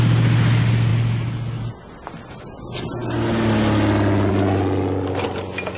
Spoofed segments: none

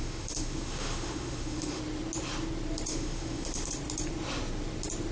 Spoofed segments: 0.0-1.8 (autoencoder, DAC-VAE); 2.9-3.7

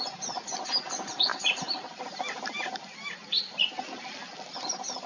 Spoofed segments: none

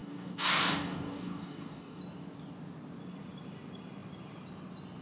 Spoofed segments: 0.0-2.0 (codec, DAC)

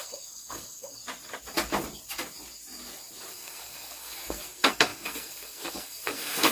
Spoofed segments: 0.0-1.0 (codec, SNAC); 3.3-6.5

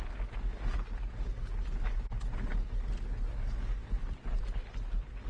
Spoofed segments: 3.8-4.4 (vocoder, BigVGAN v2)

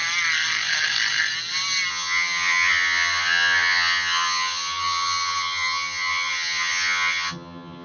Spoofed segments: 1.9-7.8 (vocoder, HiFi-GAN)